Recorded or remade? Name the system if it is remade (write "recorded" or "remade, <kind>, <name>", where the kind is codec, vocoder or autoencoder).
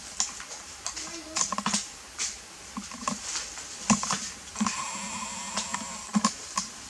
recorded